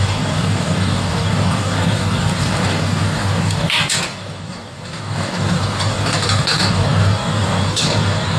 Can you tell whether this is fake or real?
fake